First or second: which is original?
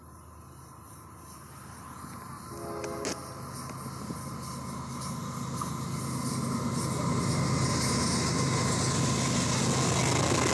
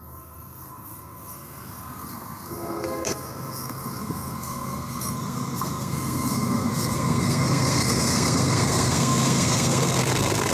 first